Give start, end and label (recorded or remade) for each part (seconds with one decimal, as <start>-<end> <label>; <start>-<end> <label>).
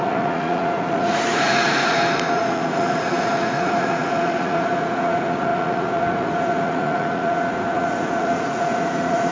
0.0-9.3 remade